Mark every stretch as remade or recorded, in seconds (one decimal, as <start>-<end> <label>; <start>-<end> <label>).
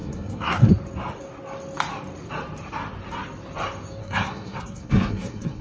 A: 0.0-0.7 remade; 0.7-4.0 recorded; 4.0-5.6 remade